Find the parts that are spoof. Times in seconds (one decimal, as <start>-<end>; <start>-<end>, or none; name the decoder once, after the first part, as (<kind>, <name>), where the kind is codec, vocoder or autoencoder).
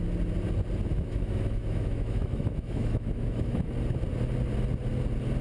0.9-3.7 (autoencoder, DAC-VAE)